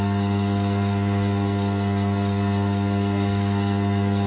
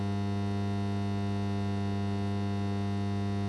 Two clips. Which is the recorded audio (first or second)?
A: second